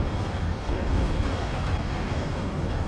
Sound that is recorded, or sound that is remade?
remade